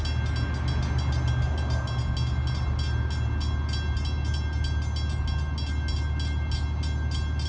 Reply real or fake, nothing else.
real